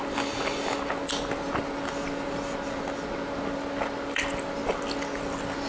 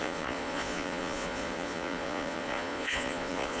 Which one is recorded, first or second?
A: first